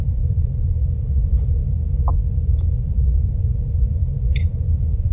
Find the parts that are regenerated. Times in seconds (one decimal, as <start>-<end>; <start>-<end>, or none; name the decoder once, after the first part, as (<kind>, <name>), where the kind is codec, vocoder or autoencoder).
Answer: 0.0-1.6 (vocoder, BigVGAN v2); 2.9-3.4; 4.4-5.1